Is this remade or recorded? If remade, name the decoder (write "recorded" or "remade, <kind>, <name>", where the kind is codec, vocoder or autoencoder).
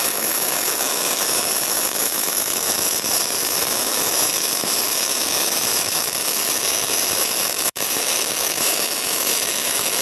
remade, autoencoder, DAC-VAE